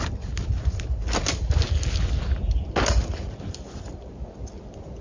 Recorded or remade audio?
recorded